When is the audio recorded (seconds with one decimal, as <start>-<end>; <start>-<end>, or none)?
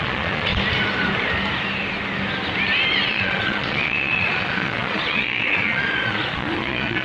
0.5-3.1